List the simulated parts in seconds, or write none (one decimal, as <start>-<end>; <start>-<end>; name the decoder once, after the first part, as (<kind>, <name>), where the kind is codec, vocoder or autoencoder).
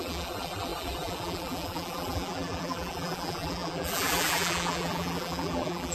0.0-5.9 (vocoder, BigVGAN v2)